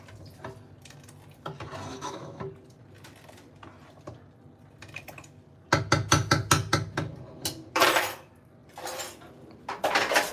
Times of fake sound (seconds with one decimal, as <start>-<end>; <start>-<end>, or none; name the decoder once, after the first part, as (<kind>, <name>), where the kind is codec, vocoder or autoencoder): 1.9-2.4 (autoencoder, DAC-VAE)